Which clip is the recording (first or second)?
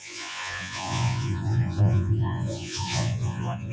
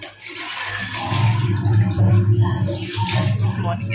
second